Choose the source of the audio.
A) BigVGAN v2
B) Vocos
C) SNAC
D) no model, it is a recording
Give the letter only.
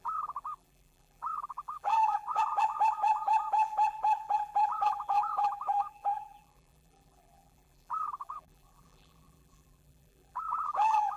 A